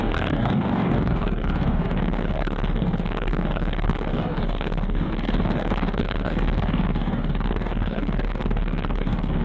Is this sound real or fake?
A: fake